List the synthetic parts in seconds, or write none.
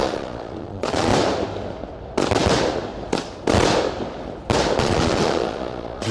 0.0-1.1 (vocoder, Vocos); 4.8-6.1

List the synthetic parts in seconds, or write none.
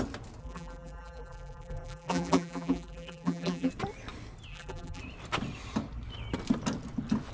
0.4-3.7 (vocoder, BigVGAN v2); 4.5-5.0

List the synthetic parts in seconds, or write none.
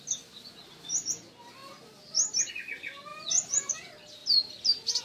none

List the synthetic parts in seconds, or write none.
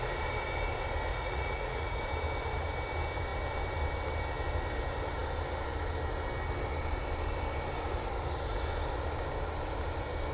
1.1-2.0 (vocoder, Vocos)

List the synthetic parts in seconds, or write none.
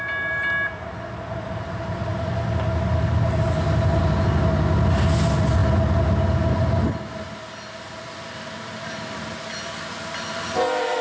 none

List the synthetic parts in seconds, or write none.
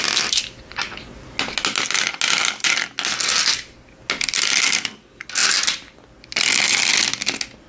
none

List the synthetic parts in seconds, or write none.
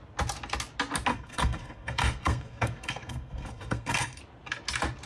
1.1-4.2 (codec, SNAC)